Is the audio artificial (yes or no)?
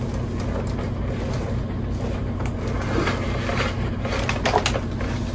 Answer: no